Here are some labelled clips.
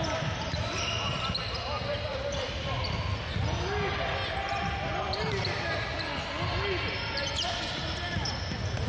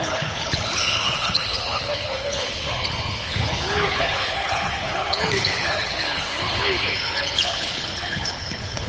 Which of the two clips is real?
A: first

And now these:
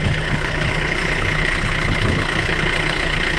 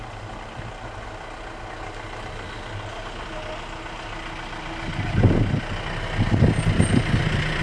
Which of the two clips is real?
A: second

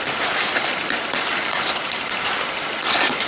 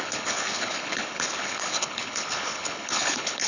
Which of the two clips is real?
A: first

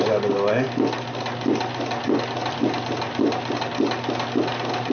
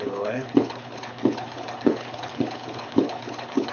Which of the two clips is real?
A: first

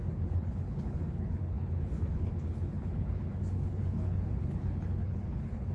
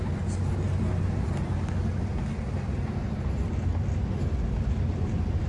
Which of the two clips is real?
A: second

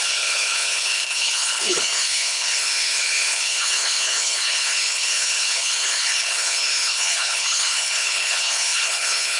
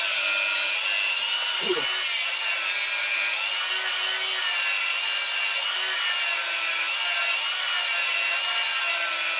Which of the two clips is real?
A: second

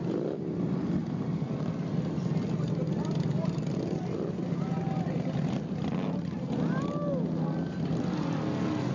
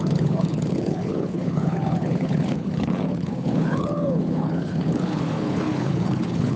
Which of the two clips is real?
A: first